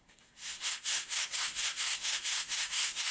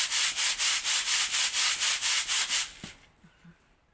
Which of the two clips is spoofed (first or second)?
first